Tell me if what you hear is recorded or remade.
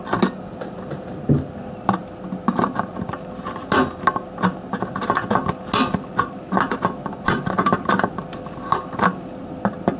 recorded